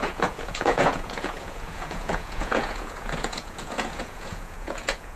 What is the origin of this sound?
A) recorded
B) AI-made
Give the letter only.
B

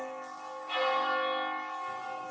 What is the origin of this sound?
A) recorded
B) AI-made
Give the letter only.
A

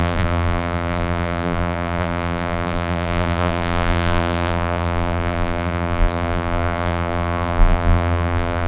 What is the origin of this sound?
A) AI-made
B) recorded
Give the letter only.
A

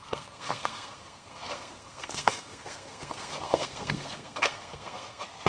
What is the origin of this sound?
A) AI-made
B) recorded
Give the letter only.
A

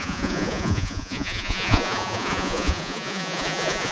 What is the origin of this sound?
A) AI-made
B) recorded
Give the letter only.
A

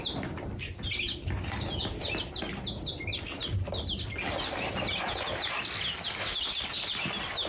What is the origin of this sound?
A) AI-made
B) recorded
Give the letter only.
B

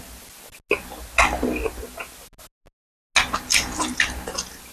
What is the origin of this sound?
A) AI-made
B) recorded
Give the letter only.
B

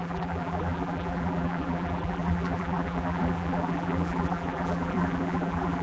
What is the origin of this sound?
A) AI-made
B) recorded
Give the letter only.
A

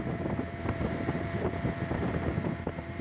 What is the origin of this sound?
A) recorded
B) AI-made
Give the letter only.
B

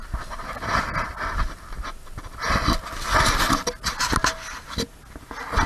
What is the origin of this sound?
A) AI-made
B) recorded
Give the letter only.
B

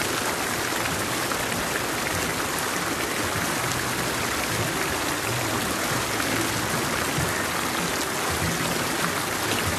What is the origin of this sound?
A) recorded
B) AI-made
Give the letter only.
A